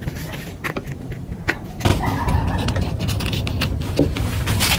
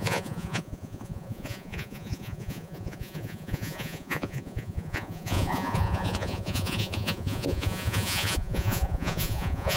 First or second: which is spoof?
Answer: second